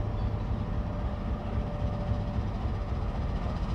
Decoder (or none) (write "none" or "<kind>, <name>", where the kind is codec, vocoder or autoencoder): none